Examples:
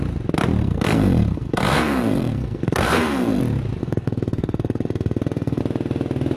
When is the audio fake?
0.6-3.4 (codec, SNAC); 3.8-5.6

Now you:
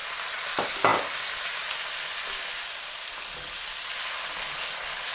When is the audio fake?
none

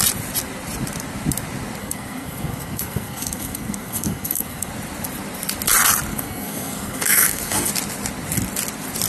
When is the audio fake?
1.8-4.7 (codec, SNAC); 6.1-7.7

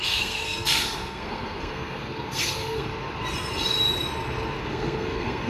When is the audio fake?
0.0-2.9 (codec, SNAC); 4.6-5.5

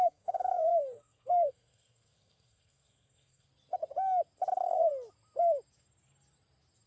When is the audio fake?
0.0-3.5 (codec, SNAC); 4.5-4.9